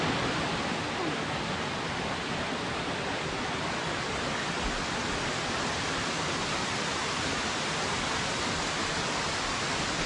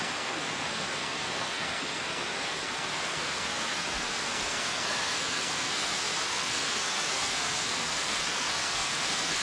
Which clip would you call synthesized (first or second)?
second